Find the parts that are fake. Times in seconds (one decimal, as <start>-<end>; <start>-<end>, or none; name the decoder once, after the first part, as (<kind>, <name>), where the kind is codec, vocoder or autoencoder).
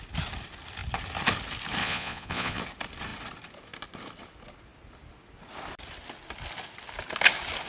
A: 1.8-2.6 (vocoder, Vocos)